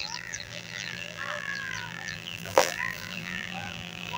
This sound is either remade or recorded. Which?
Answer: remade